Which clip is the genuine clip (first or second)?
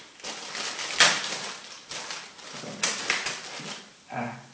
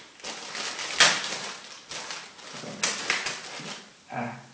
second